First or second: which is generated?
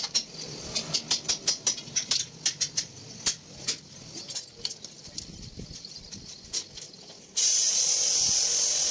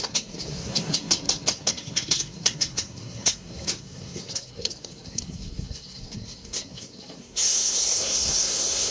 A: second